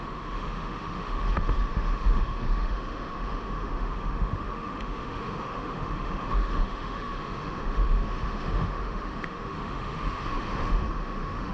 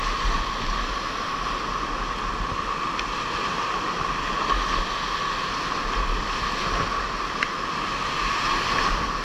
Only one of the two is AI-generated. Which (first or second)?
first